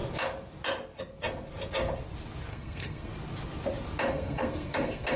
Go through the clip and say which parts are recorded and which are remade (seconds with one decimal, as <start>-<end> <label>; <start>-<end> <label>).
0.0-2.5 recorded; 2.5-3.1 remade; 3.1-4.1 recorded; 4.1-5.2 remade